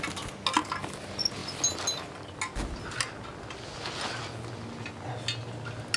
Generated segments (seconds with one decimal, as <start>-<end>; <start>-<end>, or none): none